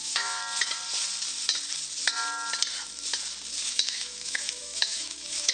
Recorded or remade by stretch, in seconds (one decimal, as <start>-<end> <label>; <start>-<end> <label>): 0.0-0.4 remade; 0.4-3.7 recorded; 3.7-5.5 remade